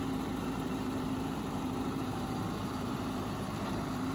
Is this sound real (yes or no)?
no